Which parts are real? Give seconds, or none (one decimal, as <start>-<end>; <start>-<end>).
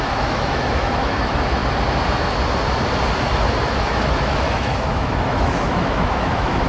1.6-3.8